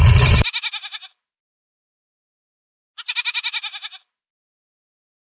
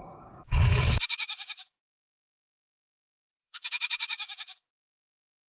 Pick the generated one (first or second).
second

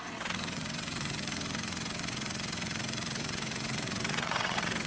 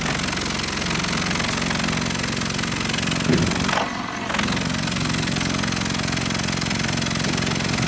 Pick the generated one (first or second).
first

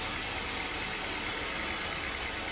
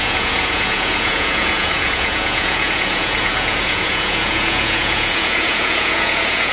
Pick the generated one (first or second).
second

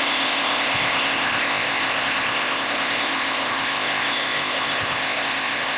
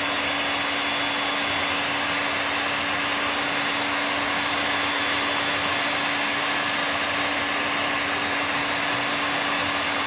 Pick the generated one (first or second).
first